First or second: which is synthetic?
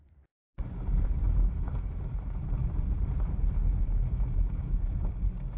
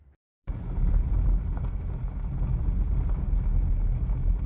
first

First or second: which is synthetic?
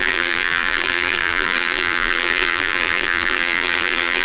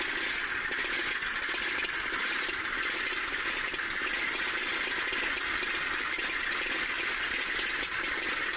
first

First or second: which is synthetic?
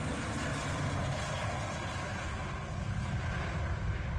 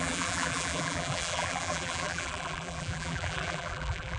second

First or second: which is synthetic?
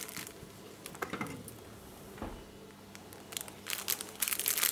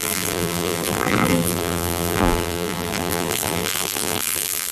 second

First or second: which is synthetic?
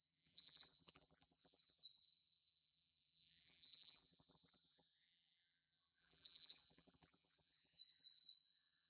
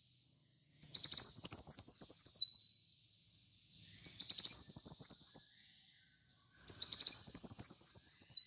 first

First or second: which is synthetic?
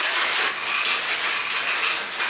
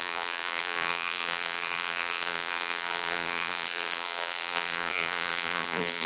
second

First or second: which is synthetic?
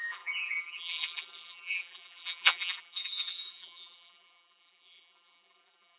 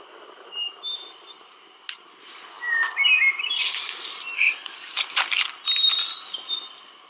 first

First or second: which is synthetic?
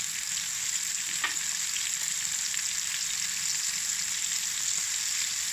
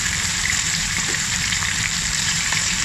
second